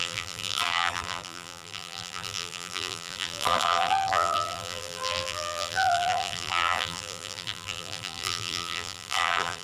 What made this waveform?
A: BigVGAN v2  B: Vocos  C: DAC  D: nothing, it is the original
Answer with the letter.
A